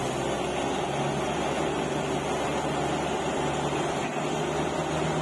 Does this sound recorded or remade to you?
recorded